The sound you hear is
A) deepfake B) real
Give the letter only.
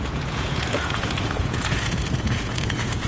A